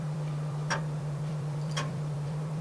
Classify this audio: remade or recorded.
remade